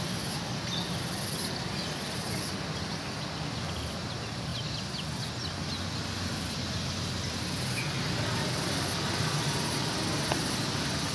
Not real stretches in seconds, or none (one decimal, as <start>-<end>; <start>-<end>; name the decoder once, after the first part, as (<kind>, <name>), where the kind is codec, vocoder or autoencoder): none